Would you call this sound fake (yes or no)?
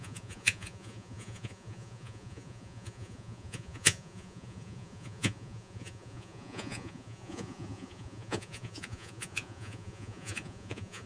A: yes